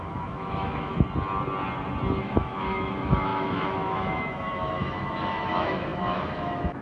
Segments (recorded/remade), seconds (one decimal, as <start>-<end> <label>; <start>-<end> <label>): 0.0-0.9 remade; 0.9-2.2 recorded; 2.2-6.8 remade